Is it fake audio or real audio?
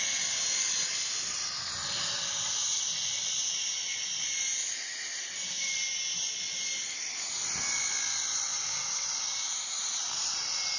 real